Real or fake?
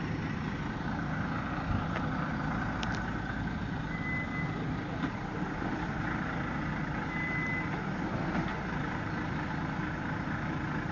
real